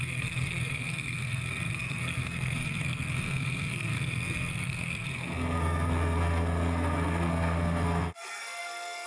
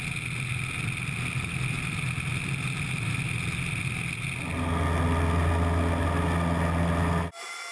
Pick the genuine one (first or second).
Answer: second